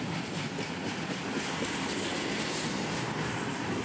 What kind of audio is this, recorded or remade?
remade